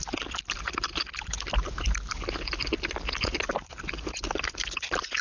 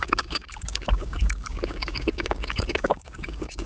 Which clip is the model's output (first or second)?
second